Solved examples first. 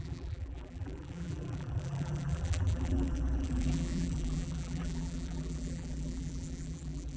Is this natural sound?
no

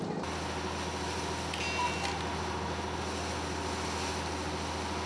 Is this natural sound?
yes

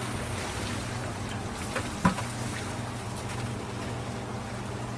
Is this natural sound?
yes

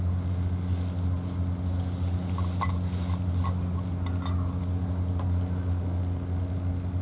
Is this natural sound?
yes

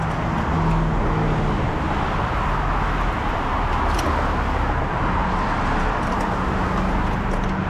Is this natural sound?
yes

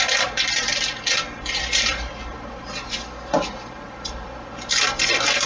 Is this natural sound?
no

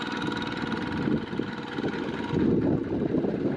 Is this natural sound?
yes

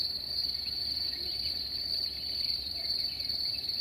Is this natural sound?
no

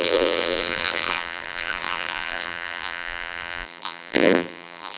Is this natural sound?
no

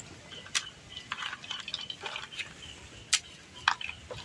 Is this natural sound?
yes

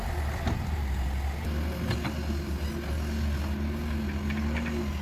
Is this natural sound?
yes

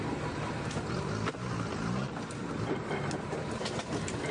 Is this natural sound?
yes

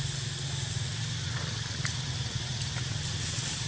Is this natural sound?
yes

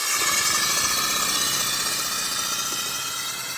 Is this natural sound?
yes